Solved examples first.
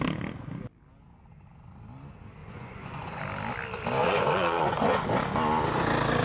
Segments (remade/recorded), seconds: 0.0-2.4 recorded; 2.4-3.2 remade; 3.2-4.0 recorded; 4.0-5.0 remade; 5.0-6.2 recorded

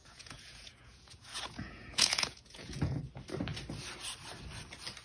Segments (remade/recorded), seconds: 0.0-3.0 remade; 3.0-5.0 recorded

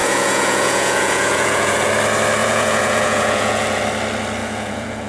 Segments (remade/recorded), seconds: 0.0-1.9 remade; 1.9-2.4 recorded; 2.4-3.8 remade; 3.8-4.4 recorded; 4.4-5.1 remade

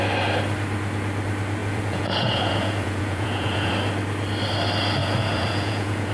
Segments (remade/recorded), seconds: 0.0-1.6 recorded; 1.6-3.7 remade; 3.7-5.0 recorded; 5.0-6.1 remade

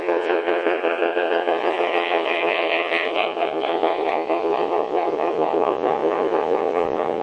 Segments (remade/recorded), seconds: 0.0-7.2 remade

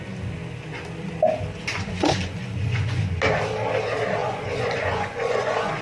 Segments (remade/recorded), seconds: 0.0-1.7 recorded; 1.7-3.0 remade; 3.0-4.2 recorded; 4.2-5.8 remade